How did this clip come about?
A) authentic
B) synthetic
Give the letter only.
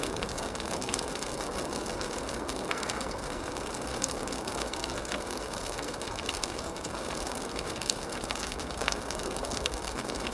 B